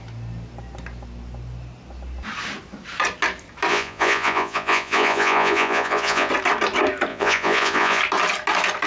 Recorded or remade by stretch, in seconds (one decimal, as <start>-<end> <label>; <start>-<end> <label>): 0.0-3.7 recorded; 3.7-6.3 remade; 6.3-7.1 recorded; 7.1-8.0 remade; 8.0-8.9 recorded